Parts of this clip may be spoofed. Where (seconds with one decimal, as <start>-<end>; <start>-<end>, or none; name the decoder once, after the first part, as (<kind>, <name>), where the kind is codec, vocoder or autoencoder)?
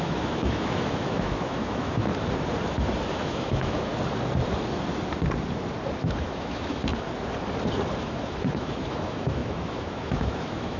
0.0-2.1 (autoencoder, DAC-VAE); 3.1-3.9; 6.2-6.8; 8.0-10.8